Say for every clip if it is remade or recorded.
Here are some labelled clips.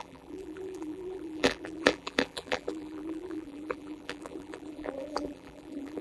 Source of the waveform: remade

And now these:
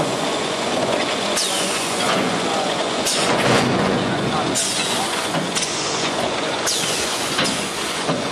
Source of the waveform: remade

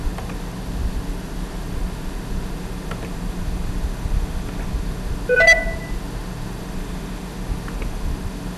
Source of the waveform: recorded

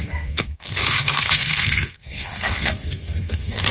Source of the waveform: remade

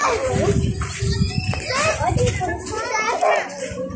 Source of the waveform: recorded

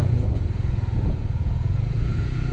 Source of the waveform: remade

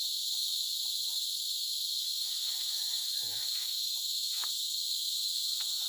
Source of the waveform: remade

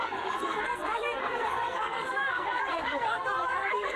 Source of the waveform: remade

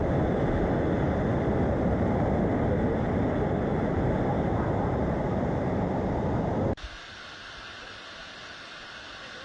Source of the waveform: recorded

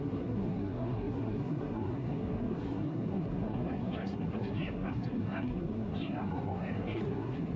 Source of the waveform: remade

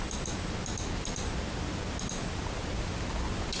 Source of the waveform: recorded